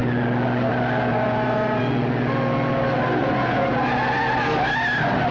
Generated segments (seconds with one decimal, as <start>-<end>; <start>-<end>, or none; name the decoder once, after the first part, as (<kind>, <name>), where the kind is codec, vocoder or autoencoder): 1.1-1.8 (vocoder, Vocos); 3.2-3.7